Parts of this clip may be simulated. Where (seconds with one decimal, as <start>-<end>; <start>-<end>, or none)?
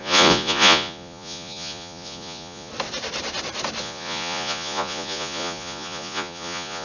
0.0-2.7; 3.8-6.8